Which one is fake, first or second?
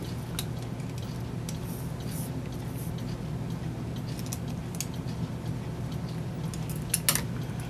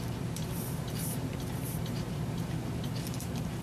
second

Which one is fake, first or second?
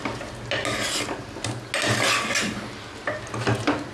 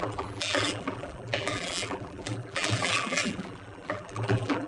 second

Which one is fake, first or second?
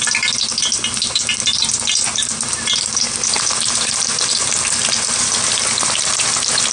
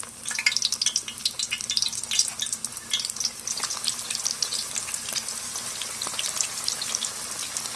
first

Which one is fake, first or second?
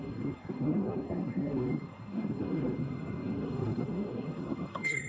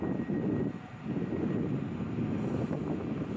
first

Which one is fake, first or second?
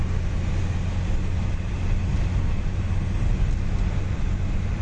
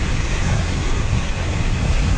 second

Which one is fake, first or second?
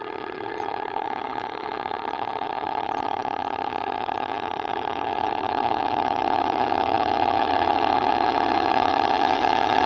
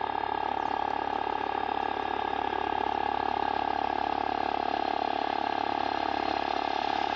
first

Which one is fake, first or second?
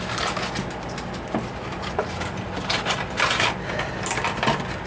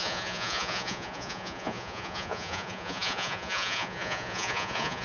second